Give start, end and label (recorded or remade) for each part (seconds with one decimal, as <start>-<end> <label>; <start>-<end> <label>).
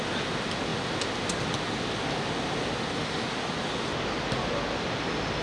0.0-5.4 recorded